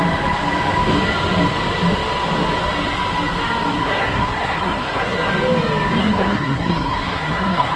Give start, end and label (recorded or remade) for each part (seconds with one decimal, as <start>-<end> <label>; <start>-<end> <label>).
0.0-3.8 recorded; 3.8-5.3 remade; 5.3-6.0 recorded; 6.0-7.8 remade